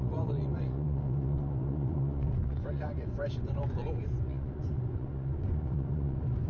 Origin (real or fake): fake